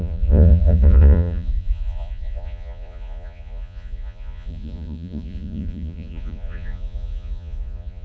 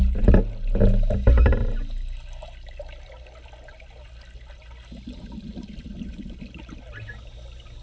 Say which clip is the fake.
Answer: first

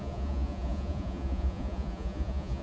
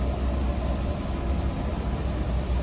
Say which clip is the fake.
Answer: first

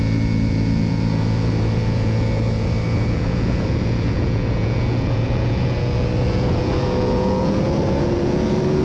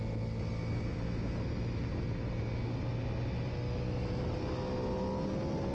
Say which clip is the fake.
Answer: first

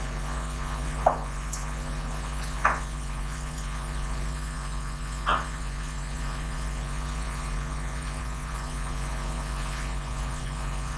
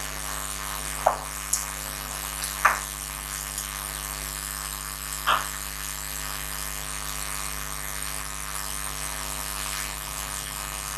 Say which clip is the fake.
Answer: first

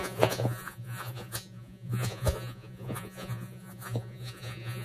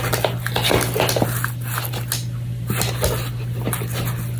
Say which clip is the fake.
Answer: first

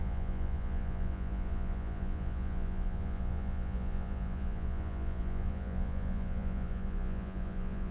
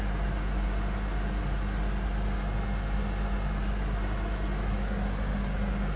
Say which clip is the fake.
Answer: first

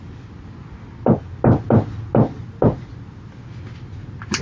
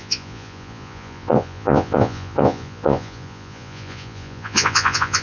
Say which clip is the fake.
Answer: second